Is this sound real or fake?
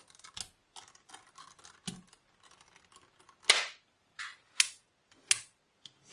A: real